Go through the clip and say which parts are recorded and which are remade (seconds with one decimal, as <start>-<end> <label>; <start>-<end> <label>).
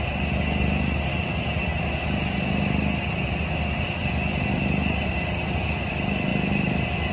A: 0.0-7.1 recorded